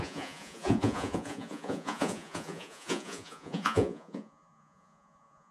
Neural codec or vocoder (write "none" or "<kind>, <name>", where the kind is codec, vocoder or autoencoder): vocoder, Vocos